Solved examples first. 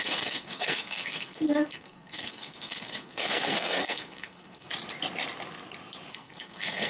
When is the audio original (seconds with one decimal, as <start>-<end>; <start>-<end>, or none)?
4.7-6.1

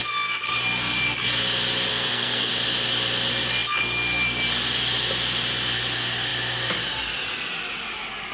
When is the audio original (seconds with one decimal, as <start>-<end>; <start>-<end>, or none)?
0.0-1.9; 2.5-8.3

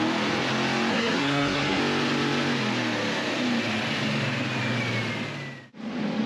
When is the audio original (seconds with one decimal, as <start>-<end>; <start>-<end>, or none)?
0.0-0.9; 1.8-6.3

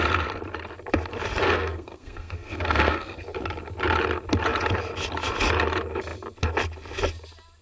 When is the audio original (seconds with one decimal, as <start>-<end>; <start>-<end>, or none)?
0.0-1.4; 3.2-7.6

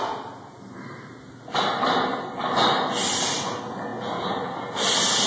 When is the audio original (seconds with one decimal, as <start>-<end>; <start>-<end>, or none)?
0.0-5.3

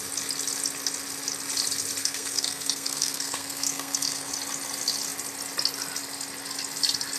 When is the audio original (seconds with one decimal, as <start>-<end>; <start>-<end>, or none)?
0.0-2.0; 4.3-7.2

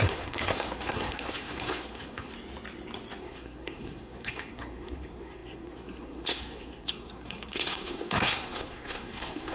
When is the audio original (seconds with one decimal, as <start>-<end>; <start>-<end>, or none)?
2.3-3.2